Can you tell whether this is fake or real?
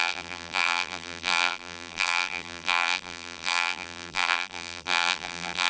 fake